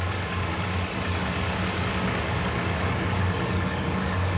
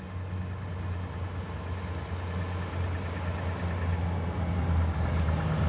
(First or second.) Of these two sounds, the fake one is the first